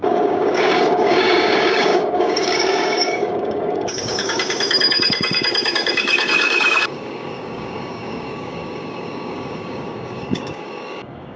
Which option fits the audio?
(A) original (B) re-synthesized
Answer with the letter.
B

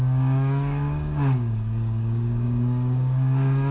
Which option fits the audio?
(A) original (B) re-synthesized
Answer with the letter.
B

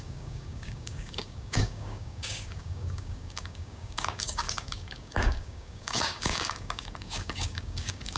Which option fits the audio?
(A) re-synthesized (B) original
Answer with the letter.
A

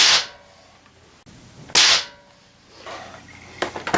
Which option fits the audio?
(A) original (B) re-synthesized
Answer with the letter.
A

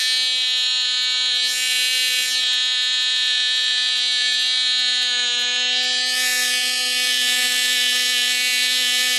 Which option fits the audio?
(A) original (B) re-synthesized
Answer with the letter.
A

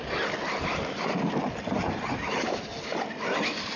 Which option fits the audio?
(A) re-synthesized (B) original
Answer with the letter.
B